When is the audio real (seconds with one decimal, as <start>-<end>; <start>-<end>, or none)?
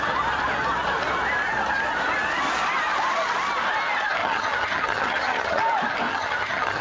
0.0-4.2; 5.6-6.1